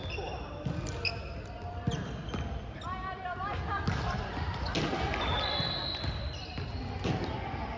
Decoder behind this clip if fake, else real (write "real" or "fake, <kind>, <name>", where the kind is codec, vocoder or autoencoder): real